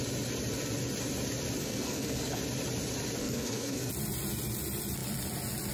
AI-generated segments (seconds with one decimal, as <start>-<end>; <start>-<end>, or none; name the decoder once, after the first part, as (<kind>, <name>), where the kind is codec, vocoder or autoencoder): 1.6-2.4 (codec, SNAC); 3.2-3.9